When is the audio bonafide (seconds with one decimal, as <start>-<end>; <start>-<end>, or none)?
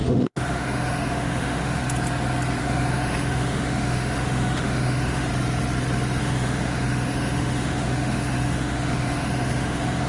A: 1.8-2.6; 5.3-6.2